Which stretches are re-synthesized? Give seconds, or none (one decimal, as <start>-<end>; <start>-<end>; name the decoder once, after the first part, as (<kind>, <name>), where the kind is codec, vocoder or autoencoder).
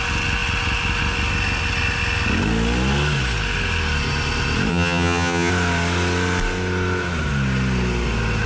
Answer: 4.7-5.5 (vocoder, HiFi-GAN)